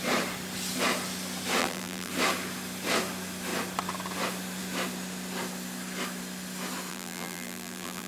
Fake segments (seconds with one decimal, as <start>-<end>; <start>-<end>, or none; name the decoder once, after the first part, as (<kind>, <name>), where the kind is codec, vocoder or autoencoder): 1.6-2.1 (vocoder, BigVGAN v2); 6.9-8.1